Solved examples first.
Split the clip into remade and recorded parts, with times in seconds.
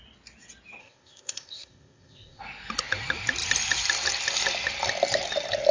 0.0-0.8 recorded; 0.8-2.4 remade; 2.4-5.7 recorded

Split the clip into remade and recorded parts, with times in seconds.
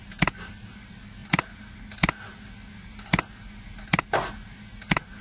0.0-5.2 recorded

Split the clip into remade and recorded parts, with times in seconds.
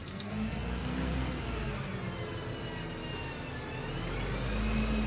0.0-1.9 remade; 1.9-5.1 recorded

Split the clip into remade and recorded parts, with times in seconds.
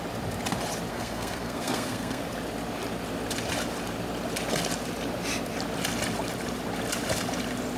0.0-0.9 recorded; 0.9-2.2 remade; 2.2-7.8 recorded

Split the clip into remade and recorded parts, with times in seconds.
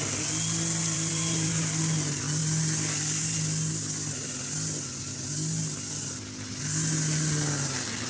0.0-0.8 recorded; 0.8-1.8 remade; 1.8-8.1 recorded